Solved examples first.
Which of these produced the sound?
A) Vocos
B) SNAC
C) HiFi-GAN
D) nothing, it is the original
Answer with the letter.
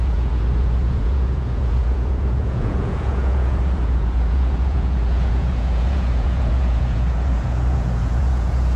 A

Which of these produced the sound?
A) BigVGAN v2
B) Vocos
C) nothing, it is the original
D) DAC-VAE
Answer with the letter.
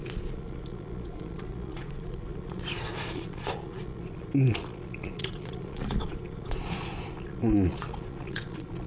B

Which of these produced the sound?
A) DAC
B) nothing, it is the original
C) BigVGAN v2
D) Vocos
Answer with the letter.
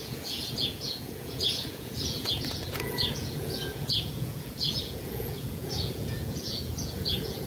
D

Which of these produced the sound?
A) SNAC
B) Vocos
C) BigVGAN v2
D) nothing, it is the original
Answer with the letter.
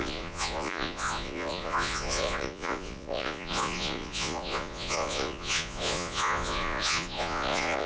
B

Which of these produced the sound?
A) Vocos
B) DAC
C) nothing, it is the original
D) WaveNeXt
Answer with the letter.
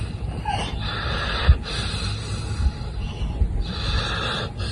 C